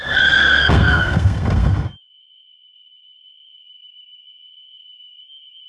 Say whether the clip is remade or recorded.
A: remade